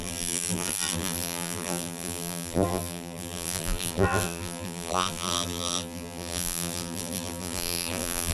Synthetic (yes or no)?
yes